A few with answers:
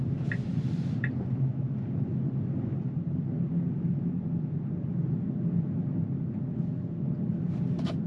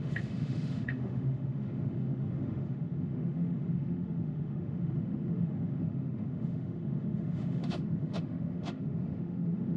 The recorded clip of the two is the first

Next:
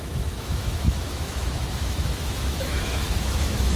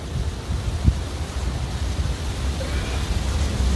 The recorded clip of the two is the second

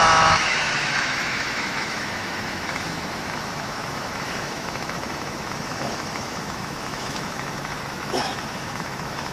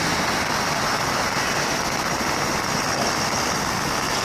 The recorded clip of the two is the second